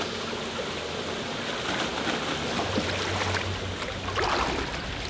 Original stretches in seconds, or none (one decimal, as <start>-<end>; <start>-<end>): 0.0-5.1